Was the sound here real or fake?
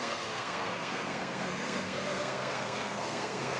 fake